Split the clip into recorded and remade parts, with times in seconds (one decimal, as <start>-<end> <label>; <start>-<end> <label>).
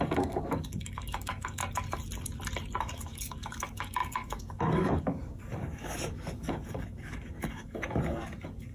0.0-1.6 remade; 1.6-2.8 recorded; 2.8-8.7 remade